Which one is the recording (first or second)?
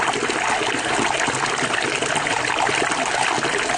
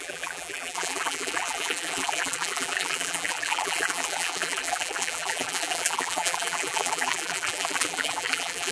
first